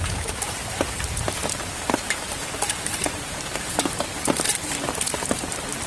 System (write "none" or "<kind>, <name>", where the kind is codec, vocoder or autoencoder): vocoder, BigVGAN v2